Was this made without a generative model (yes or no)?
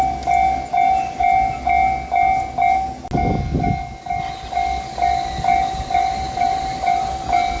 yes